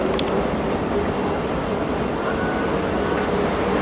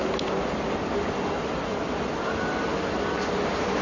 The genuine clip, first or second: second